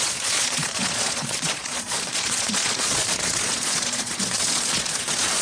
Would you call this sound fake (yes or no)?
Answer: yes